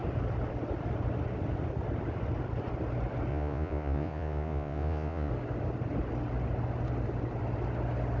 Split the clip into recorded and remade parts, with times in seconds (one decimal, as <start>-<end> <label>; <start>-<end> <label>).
0.0-3.3 recorded; 3.3-5.3 remade; 5.3-8.2 recorded